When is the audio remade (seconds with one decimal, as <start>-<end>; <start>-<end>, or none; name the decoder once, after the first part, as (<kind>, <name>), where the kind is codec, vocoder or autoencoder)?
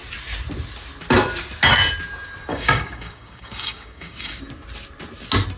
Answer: 2.5-4.4 (codec, DAC)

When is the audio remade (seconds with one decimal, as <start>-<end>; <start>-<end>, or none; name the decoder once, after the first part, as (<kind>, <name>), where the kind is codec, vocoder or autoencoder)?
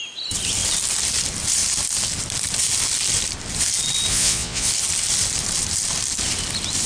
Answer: 4.1-4.7 (vocoder, Vocos)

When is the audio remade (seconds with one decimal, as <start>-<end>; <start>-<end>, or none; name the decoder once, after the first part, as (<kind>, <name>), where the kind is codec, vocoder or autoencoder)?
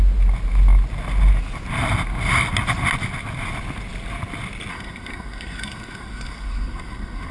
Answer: 4.7-7.3 (codec, SNAC)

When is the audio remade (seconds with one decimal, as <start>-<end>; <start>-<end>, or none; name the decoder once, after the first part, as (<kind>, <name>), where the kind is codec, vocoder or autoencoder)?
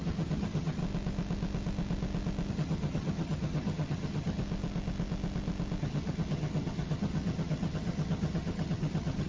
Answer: 0.0-0.8 (vocoder, HiFi-GAN); 2.5-4.4; 5.8-9.3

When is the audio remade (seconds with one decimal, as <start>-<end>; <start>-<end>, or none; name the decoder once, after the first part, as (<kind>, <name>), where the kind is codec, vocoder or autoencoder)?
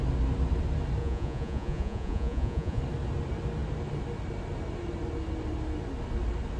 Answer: 1.0-2.8 (vocoder, Vocos)